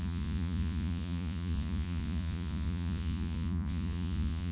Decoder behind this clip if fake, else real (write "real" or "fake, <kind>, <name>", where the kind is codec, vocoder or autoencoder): fake, vocoder, Vocos